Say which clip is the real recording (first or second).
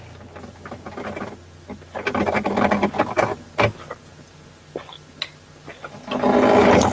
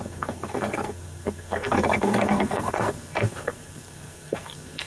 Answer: first